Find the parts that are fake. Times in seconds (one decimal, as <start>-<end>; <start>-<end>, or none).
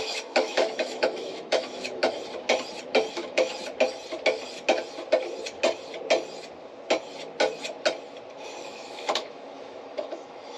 0.0-2.0; 3.1-3.5; 8.6-10.6